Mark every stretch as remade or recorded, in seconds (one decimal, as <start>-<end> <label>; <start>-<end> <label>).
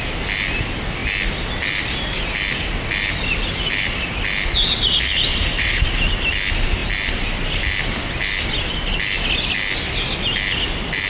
0.0-5.3 recorded; 5.3-5.8 remade; 5.8-11.1 recorded